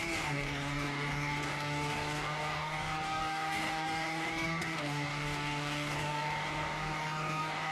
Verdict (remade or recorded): remade